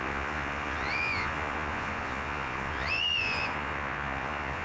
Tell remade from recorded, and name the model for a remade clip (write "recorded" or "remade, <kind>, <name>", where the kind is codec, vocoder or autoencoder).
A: remade, vocoder, Vocos